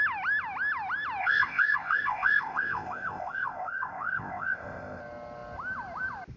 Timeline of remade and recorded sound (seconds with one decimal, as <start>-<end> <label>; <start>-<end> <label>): 0.0-1.2 recorded; 1.2-5.0 remade; 5.0-6.4 recorded